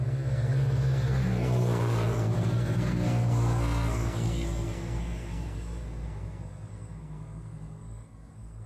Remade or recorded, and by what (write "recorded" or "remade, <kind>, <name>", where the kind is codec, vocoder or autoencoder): remade, codec, SNAC